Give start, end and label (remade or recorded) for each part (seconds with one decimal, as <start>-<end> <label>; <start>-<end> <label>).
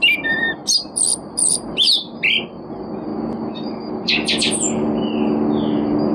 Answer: 0.0-6.1 recorded